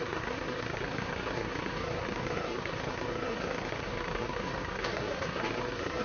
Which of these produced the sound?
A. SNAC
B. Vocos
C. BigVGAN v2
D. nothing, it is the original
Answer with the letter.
A